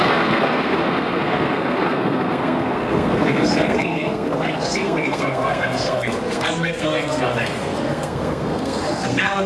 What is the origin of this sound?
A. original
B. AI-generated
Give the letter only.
B